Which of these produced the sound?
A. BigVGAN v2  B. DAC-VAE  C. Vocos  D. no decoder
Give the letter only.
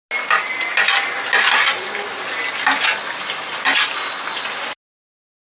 D